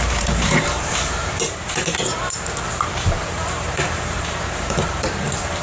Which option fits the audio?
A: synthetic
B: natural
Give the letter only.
A